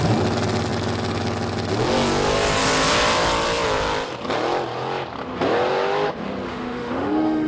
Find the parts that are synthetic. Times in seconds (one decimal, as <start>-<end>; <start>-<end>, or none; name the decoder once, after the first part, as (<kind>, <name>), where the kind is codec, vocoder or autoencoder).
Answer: 6.5-7.5 (autoencoder, DAC-VAE)